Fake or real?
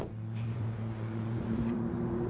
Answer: fake